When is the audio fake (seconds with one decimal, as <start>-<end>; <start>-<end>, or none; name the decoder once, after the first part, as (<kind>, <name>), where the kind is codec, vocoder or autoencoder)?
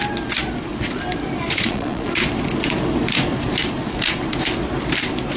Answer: 1.5-2.2 (vocoder, Vocos)